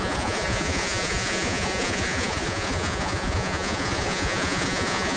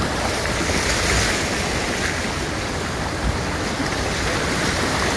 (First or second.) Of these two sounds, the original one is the second